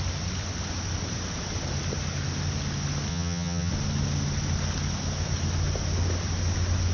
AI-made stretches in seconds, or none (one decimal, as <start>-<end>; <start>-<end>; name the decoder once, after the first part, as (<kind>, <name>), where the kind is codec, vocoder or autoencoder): 3.1-3.7 (vocoder, HiFi-GAN)

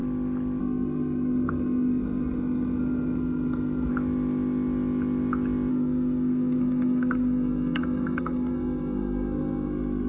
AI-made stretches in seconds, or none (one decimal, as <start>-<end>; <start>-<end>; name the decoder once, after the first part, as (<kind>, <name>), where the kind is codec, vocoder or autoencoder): 0.6-3.9 (codec, SNAC); 5.7-10.1

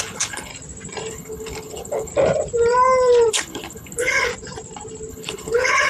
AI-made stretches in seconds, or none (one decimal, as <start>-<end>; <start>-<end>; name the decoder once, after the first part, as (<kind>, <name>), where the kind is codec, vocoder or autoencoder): 0.0-0.5 (codec, HILCodec); 1.1-2.1; 3.3-4.3; 5.1-5.9

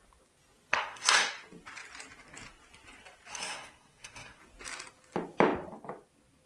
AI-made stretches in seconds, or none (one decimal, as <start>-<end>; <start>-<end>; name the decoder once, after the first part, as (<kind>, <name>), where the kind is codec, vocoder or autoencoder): 0.7-1.3 (codec, SNAC); 3.3-4.4